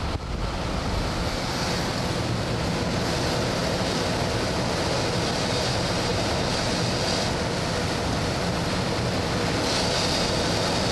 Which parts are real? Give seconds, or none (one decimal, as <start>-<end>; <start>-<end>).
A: 0.0-10.9